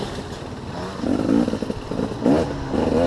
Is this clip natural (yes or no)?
yes